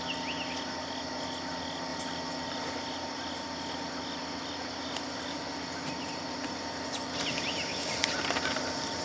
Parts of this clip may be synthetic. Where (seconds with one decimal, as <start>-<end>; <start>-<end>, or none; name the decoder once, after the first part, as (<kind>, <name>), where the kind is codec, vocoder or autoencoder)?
none